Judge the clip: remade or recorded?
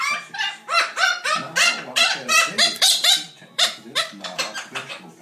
remade